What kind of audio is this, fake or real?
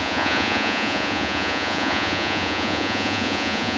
fake